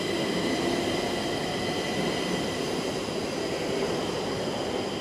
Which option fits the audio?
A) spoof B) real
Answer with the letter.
B